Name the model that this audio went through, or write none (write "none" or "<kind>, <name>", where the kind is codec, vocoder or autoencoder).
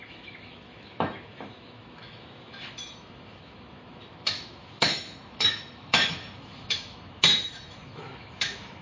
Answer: autoencoder, DAC-VAE